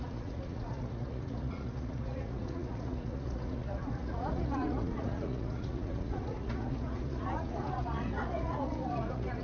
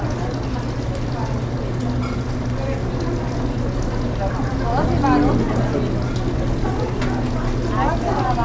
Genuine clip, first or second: second